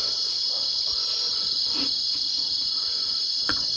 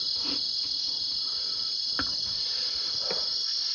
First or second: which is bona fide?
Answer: second